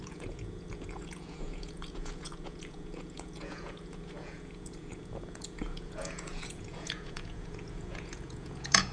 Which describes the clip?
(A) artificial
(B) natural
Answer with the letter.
A